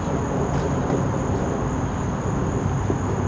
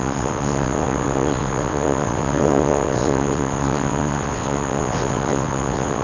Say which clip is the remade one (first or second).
second